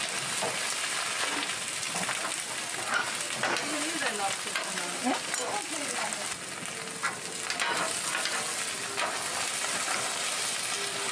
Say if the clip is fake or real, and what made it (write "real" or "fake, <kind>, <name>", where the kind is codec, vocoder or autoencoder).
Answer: real